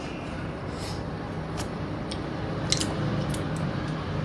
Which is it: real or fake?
real